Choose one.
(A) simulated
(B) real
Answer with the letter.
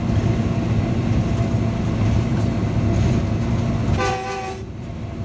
B